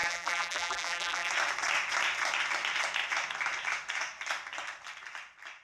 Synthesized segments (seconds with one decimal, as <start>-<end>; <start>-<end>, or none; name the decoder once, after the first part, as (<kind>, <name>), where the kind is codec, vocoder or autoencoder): 0.0-1.3 (vocoder, BigVGAN v2)